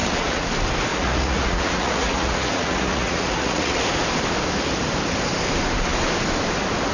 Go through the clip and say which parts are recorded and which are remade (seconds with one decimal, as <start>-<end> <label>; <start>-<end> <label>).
0.0-0.5 remade; 0.5-0.9 recorded; 0.9-3.8 remade; 3.8-6.9 recorded